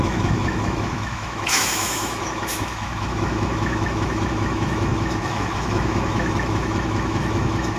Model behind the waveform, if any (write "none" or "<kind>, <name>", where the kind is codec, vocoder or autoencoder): autoencoder, DAC-VAE